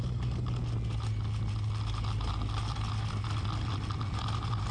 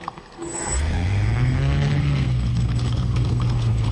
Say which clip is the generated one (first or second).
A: second